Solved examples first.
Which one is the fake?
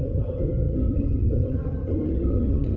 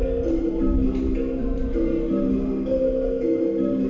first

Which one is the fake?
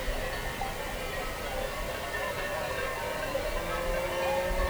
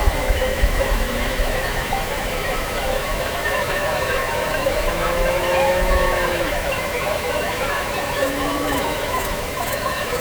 second